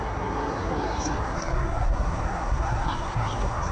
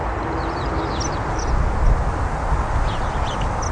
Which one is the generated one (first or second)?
first